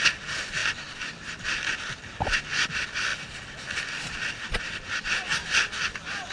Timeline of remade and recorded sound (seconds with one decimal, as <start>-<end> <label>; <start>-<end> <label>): 0.0-6.3 recorded